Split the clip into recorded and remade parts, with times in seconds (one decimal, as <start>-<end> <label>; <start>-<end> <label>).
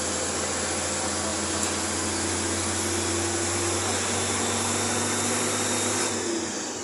0.0-6.8 recorded